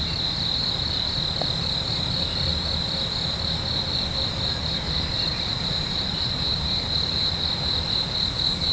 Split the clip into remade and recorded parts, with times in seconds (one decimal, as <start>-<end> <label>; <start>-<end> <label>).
0.0-8.7 recorded